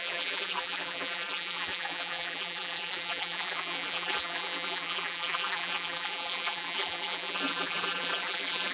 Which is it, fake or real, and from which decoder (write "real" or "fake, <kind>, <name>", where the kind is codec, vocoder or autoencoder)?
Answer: fake, vocoder, BigVGAN v2